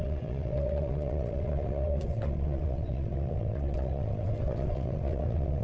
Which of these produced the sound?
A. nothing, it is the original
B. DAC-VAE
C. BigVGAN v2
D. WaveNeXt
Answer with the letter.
D